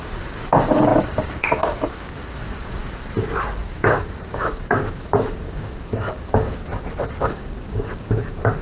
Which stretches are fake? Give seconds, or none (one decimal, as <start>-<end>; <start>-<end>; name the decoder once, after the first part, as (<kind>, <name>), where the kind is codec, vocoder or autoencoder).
0.0-2.8 (codec, DAC); 3.7-6.6; 7.2-8.6